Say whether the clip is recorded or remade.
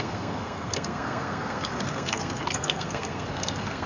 remade